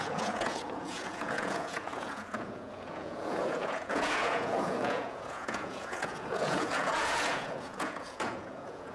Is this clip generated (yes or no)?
yes